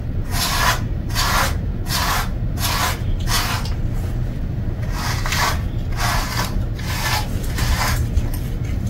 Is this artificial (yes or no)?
no